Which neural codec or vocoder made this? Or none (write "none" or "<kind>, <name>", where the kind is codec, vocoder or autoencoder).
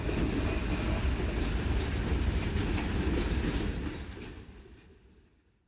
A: none